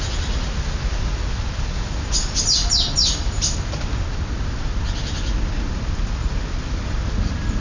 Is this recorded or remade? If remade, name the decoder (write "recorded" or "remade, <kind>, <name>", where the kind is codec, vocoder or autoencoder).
recorded